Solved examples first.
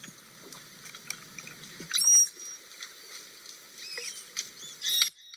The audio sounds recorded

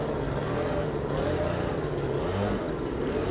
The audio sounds recorded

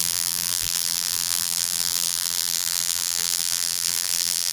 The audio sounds remade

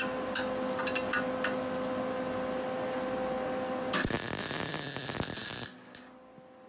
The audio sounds recorded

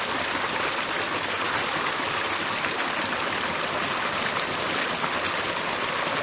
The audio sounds recorded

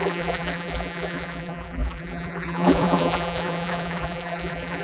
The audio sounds remade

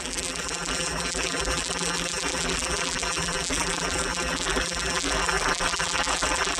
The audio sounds remade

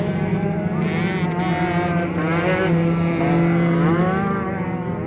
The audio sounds recorded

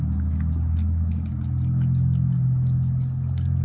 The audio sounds recorded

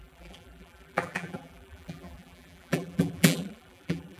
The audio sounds remade